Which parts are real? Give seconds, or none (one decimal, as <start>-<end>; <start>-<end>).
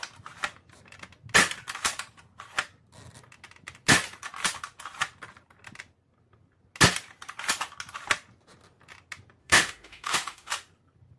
0.0-9.4; 10.5-11.2